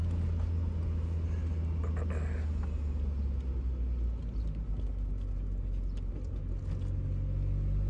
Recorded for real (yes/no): yes